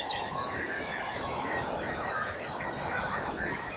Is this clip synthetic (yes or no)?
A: yes